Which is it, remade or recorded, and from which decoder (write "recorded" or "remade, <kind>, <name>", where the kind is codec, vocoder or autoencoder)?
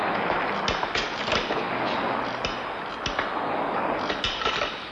recorded